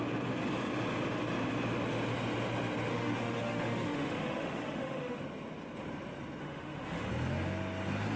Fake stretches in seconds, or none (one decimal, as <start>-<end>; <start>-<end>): 2.9-5.2; 6.4-7.1